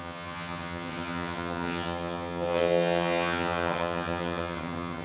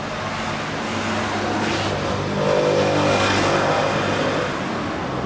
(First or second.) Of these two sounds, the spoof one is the first